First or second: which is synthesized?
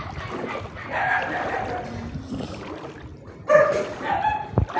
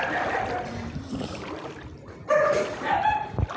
second